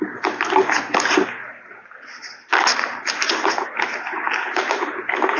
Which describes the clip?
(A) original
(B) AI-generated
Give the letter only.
A